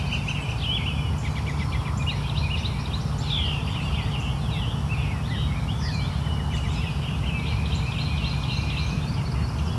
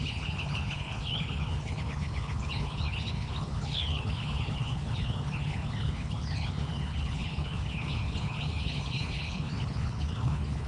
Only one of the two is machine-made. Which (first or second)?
second